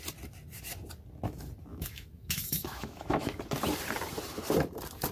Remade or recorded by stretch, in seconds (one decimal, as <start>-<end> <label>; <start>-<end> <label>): 0.0-1.7 recorded; 1.7-3.4 remade; 3.4-5.1 recorded